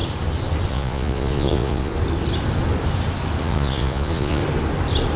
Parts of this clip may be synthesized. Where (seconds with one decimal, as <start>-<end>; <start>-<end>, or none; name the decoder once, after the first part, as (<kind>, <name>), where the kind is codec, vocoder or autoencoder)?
0.7-1.9 (vocoder, Vocos); 3.4-4.4